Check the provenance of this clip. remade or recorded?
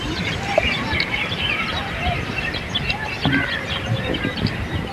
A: remade